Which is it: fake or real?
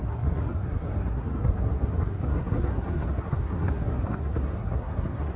fake